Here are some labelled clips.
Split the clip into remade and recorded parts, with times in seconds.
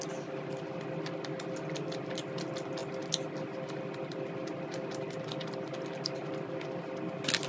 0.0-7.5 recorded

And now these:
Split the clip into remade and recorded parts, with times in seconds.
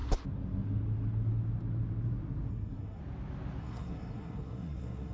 0.0-2.5 recorded; 2.5-3.0 remade; 3.0-3.6 recorded; 3.6-5.1 remade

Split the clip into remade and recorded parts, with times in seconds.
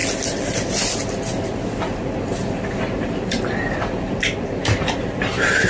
0.0-5.7 remade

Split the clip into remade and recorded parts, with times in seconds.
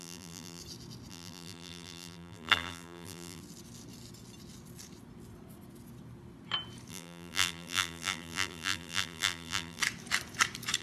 0.0-0.6 remade; 0.6-1.1 recorded; 1.1-3.4 remade; 3.4-6.9 recorded; 6.9-9.8 remade; 9.8-10.8 recorded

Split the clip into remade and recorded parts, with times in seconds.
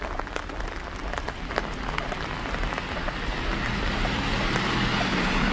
0.0-5.5 recorded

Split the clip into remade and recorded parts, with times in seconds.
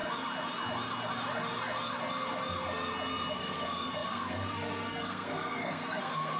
0.0-3.3 recorded; 3.3-6.4 remade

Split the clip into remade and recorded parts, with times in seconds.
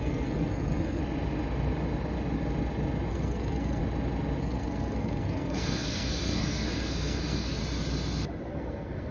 0.0-1.0 remade; 1.0-3.1 recorded; 3.1-3.8 remade; 3.8-4.4 recorded; 4.4-7.6 remade; 7.6-8.5 recorded; 8.5-9.1 remade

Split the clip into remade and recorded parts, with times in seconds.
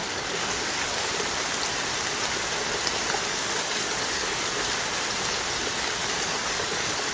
0.0-1.1 remade; 1.1-3.3 recorded; 3.3-4.3 remade; 4.3-6.0 recorded; 6.0-7.1 remade